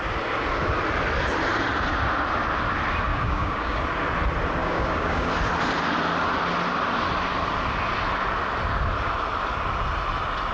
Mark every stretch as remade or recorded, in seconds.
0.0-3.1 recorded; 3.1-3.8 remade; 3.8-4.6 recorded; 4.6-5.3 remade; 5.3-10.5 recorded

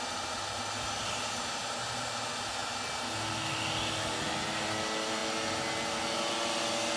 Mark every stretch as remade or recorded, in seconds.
0.0-7.0 recorded

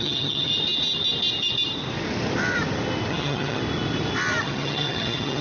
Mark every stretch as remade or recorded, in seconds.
0.0-0.5 remade; 0.5-3.1 recorded; 3.1-3.6 remade; 3.6-4.4 recorded; 4.4-5.4 remade

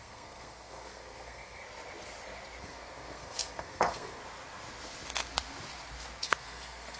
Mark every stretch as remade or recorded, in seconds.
0.0-1.6 remade; 1.6-2.6 recorded; 2.6-4.2 remade; 4.2-6.2 recorded; 6.2-7.0 remade

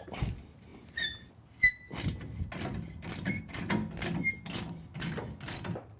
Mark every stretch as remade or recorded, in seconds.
0.0-6.0 recorded

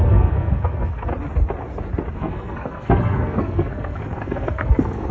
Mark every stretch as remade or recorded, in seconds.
0.0-1.1 remade; 1.1-2.1 recorded; 2.1-5.1 remade